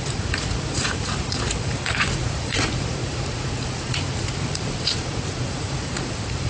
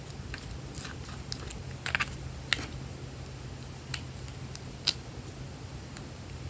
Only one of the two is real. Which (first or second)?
second